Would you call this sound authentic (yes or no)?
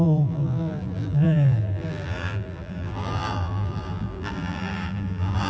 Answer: no